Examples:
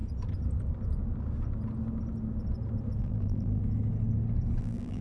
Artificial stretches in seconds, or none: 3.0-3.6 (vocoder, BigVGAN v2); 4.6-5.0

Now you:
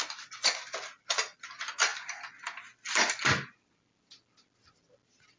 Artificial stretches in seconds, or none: none

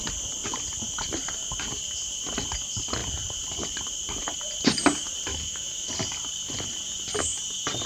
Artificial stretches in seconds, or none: 5.3-5.9 (autoencoder, DAC-VAE)

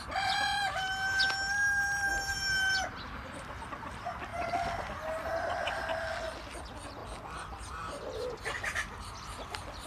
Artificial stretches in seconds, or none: none

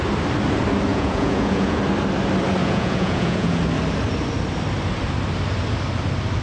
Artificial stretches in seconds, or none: 0.9-1.8 (vocoder, Vocos); 2.6-3.6